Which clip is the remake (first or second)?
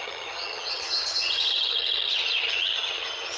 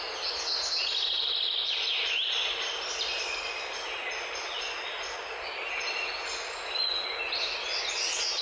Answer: first